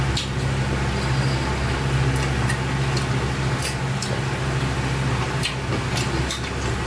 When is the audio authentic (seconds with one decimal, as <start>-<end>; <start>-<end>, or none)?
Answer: 0.0-6.9